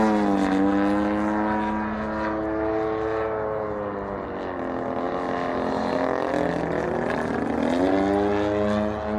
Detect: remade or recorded recorded